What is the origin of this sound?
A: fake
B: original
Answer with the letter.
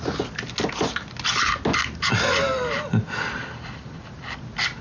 B